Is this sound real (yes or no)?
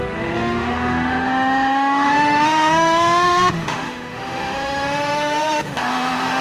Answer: no